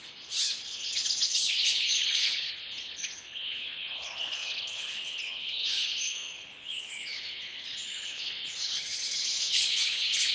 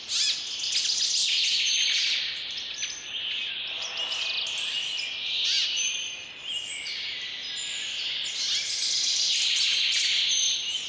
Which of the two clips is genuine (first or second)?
second